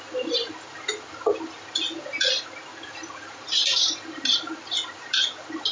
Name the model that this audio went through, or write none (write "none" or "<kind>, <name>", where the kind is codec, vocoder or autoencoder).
none